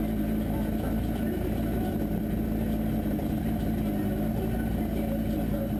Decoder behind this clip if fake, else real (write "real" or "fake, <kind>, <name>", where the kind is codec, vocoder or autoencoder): real